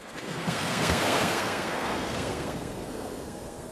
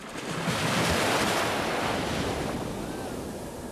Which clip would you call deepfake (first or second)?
first